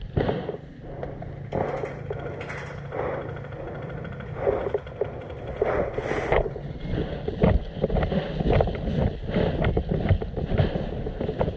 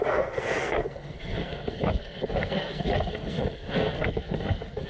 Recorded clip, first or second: first